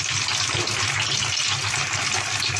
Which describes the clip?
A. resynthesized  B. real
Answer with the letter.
B